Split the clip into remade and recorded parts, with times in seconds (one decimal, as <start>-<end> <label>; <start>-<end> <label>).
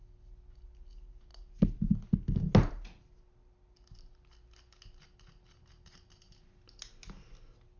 0.0-7.8 recorded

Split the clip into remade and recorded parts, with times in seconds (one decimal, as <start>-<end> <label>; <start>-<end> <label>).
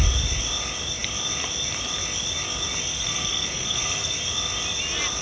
0.0-2.9 recorded; 2.9-4.1 remade; 4.1-5.2 recorded